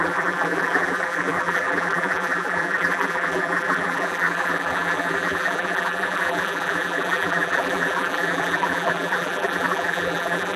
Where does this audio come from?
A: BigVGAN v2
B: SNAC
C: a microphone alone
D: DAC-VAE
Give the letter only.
A